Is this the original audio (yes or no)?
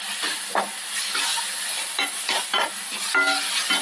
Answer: yes